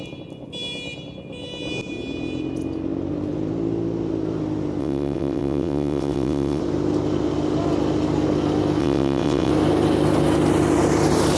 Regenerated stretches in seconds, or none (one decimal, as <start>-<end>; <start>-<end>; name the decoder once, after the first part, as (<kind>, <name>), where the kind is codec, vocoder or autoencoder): 4.8-6.6 (vocoder, WaveNeXt); 8.8-9.5